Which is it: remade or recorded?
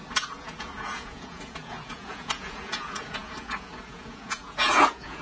remade